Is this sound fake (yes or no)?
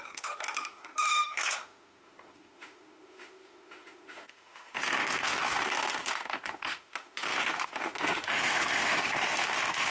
yes